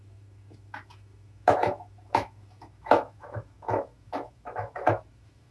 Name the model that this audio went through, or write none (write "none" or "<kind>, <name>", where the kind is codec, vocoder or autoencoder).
autoencoder, DAC-VAE